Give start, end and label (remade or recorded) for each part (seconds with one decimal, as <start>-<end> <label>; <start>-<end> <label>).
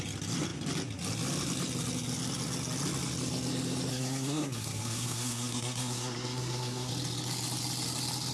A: 0.0-3.9 recorded; 3.9-6.9 remade; 6.9-8.3 recorded